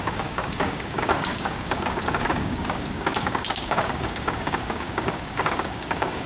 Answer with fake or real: fake